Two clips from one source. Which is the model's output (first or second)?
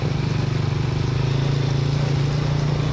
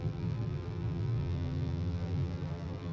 second